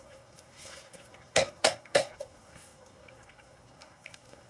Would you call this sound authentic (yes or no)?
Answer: no